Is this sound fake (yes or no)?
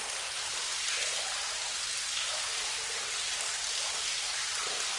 no